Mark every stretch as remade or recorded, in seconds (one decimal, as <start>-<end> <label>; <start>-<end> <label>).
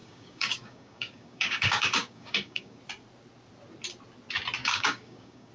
0.0-2.8 remade; 2.8-4.6 recorded; 4.6-5.5 remade